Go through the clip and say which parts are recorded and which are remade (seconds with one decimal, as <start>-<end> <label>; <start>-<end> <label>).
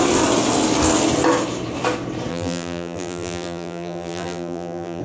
0.0-2.3 recorded; 2.3-5.0 remade